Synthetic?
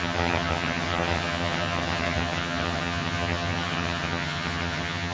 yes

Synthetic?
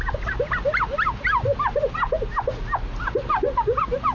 no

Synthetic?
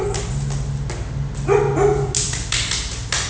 no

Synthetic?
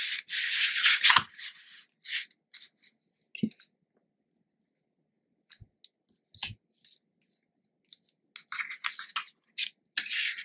no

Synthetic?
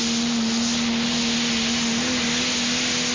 no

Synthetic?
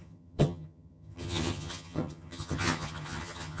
yes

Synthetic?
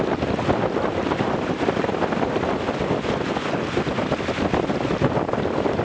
no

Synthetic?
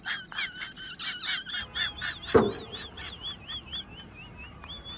no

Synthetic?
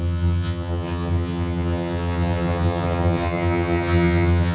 yes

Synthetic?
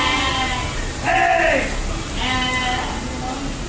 no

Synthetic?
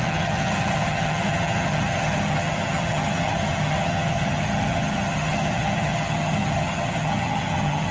yes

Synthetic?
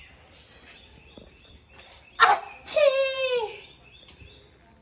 no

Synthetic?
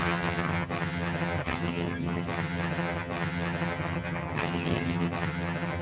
yes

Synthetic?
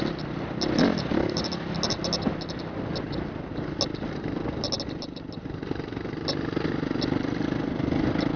no